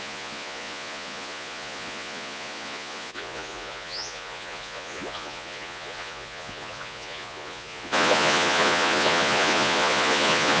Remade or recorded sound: remade